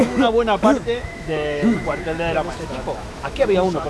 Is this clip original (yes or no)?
no